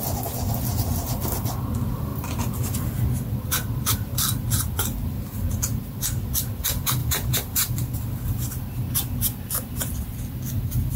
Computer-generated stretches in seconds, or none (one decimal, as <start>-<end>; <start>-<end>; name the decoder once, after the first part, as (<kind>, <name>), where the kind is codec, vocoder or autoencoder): 7.0-7.9 (vocoder, BigVGAN v2)